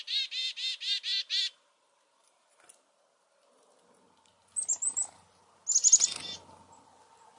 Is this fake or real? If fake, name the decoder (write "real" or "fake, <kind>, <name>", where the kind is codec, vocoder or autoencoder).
real